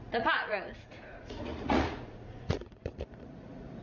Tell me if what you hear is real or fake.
fake